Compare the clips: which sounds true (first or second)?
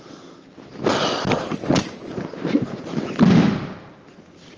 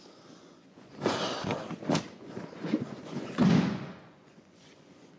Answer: first